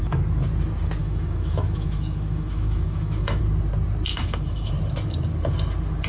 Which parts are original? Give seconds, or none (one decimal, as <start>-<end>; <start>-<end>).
0.0-1.0; 3.4-4.1; 4.7-6.1